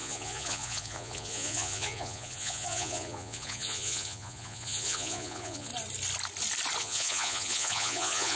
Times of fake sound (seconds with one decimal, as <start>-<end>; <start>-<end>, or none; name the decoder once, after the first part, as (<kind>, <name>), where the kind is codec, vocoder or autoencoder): 0.0-5.7 (vocoder, Vocos); 6.8-8.4